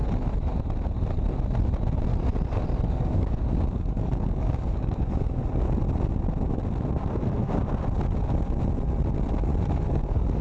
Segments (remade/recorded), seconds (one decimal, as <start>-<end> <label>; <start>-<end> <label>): 0.0-2.9 recorded; 2.9-5.4 remade; 5.4-9.9 recorded; 9.9-10.4 remade